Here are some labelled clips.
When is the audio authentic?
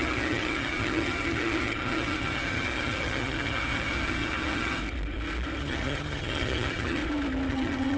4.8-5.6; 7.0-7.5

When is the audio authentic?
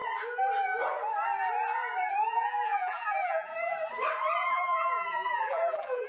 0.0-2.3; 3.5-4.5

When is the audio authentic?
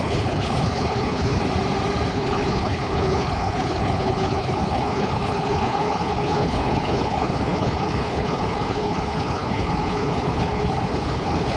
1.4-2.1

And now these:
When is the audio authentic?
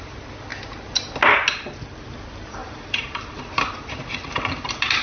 0.0-2.6; 3.4-5.0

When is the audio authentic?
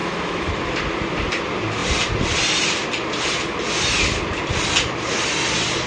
0.5-5.9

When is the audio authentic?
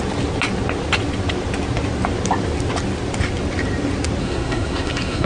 0.0-4.2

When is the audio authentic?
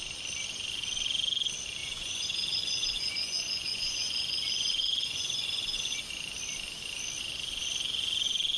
0.0-1.8; 6.0-8.6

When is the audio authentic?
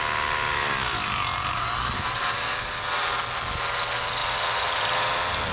0.0-4.2; 4.8-5.5